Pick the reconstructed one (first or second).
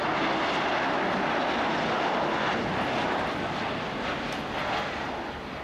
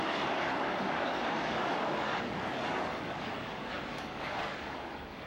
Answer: second